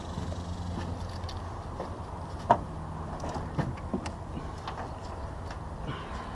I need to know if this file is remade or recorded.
recorded